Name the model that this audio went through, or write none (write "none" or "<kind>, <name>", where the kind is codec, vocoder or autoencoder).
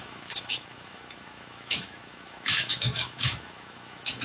autoencoder, DAC-VAE